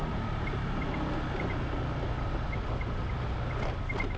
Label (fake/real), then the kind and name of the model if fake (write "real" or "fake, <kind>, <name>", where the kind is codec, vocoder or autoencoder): real